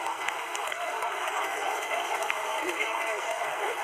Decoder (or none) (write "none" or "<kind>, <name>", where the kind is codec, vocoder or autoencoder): codec, SNAC